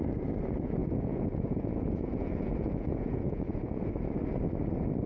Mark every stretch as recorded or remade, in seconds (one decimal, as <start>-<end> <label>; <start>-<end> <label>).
0.0-0.8 recorded; 0.8-3.9 remade; 3.9-5.1 recorded